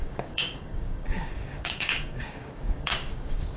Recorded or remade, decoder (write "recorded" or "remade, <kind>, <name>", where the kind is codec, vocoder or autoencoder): remade, codec, DAC